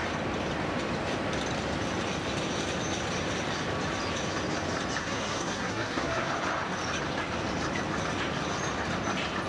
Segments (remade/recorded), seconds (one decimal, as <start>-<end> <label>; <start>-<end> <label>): 0.0-5.0 recorded; 5.0-6.3 remade; 6.3-9.5 recorded